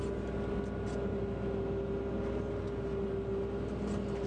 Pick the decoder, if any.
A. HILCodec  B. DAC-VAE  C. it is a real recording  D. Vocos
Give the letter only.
C